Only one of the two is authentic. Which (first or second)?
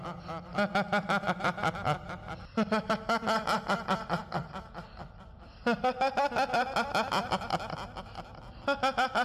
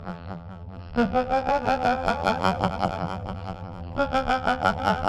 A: first